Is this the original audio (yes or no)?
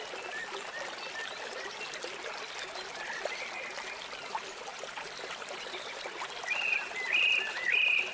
yes